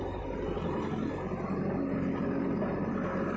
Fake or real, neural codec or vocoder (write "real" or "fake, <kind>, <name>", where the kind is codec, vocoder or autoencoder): real